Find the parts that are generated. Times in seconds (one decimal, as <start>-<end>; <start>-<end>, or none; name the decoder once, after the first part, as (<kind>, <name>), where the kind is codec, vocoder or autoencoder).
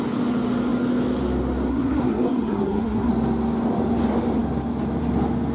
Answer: 1.7-3.1 (codec, SNAC)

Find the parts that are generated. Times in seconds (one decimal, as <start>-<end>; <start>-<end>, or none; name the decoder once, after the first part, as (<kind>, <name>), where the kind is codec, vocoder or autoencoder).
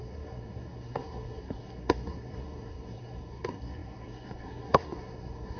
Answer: 0.0-5.6 (codec, SNAC)